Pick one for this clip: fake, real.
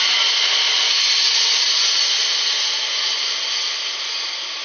real